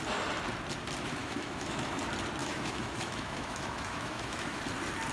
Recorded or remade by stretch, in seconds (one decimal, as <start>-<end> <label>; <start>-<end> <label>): 0.0-1.2 recorded; 1.2-2.0 remade; 2.0-2.4 recorded; 2.4-4.6 remade; 4.6-5.1 recorded